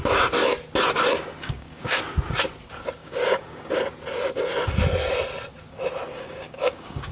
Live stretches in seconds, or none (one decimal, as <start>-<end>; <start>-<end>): 0.0-1.4; 2.0-3.0; 3.8-6.1